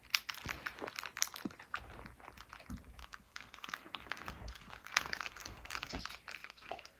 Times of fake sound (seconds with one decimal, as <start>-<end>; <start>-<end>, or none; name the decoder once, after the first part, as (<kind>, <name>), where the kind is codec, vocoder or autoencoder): 3.0-6.0 (codec, SNAC); 6.4-7.0